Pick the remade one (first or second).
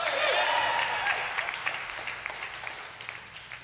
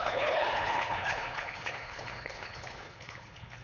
second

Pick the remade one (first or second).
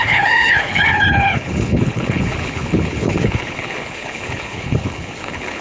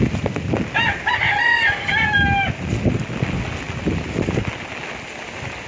first